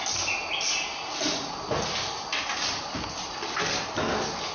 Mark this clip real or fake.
real